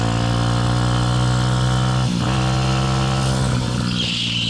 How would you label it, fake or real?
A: real